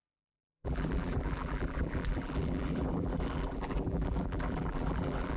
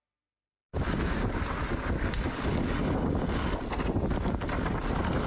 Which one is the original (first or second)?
second